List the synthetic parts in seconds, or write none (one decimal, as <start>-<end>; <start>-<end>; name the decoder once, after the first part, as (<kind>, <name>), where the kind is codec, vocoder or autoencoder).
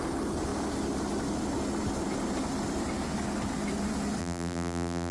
4.2-5.1 (vocoder, BigVGAN v2)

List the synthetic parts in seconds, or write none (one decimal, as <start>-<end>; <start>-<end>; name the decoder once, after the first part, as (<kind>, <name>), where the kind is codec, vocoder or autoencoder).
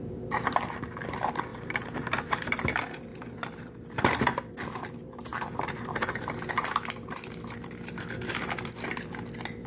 1.5-2.6 (vocoder, BigVGAN v2); 3.1-4.5; 5.3-6.2